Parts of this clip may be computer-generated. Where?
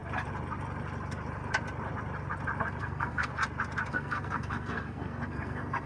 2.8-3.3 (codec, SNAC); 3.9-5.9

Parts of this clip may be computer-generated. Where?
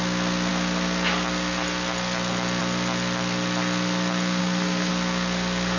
4.4-4.9 (codec, SNAC)